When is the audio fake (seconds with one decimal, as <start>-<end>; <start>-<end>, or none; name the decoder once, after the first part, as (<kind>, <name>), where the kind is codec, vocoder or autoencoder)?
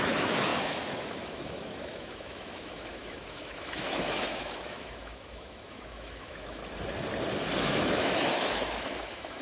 0.0-6.6 (autoencoder, DAC-VAE); 7.6-9.4